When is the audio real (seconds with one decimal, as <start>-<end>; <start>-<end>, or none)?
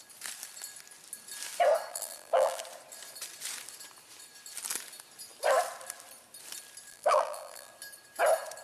0.0-1.9; 2.6-6.9; 7.7-8.6